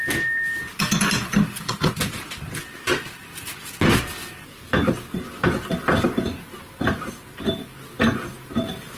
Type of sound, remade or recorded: recorded